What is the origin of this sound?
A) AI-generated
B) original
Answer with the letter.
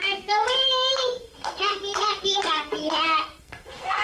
A